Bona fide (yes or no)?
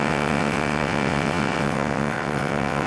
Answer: no